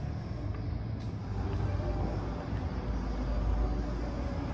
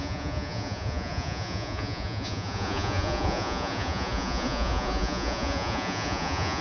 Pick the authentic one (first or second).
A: first